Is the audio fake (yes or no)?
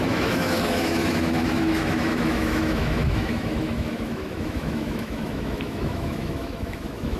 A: yes